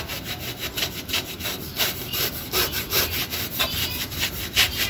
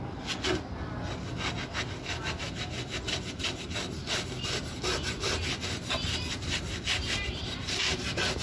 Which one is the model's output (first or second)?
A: first